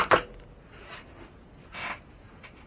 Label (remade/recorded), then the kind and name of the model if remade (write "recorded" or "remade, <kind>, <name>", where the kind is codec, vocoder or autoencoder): recorded